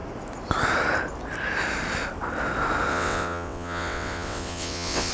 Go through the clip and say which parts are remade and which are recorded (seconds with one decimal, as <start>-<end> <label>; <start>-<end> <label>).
0.0-2.9 recorded; 2.9-5.1 remade